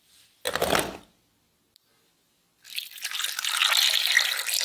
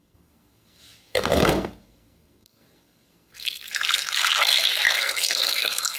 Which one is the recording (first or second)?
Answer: first